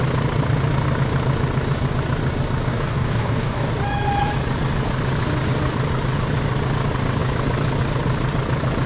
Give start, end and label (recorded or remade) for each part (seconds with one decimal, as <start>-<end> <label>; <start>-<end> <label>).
0.0-2.7 recorded; 2.7-3.7 remade; 3.7-8.9 recorded